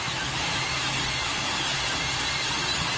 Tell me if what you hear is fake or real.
real